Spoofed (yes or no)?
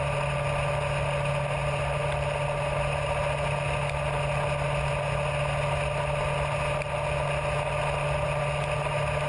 no